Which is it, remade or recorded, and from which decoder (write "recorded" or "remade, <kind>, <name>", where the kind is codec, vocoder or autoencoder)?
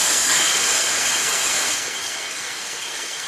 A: remade, codec, SNAC